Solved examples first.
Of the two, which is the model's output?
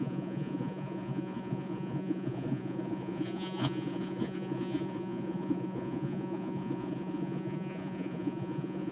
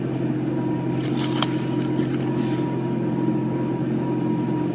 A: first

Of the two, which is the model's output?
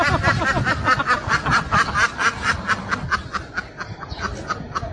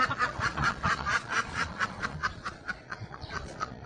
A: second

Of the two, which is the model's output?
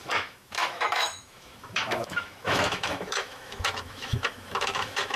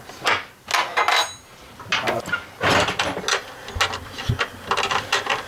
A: first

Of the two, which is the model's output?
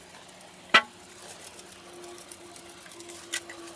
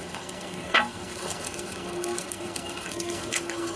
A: second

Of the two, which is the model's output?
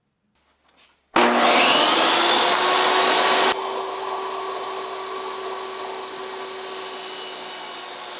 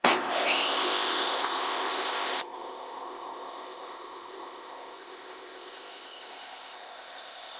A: second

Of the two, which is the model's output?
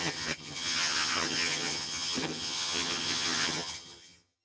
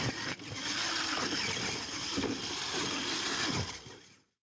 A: first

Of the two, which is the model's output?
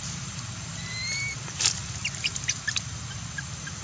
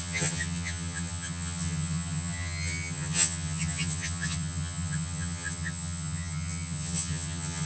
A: second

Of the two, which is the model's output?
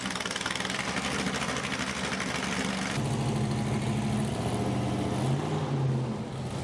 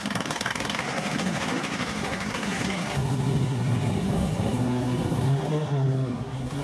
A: second